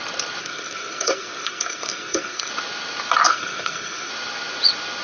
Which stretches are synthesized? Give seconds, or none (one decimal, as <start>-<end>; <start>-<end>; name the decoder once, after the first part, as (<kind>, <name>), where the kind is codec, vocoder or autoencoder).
0.4-2.5 (codec, SNAC); 3.3-4.1